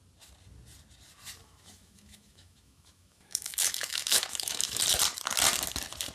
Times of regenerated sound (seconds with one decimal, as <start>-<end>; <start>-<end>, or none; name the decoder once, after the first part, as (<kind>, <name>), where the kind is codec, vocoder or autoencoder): 1.4-4.8 (autoencoder, DAC-VAE)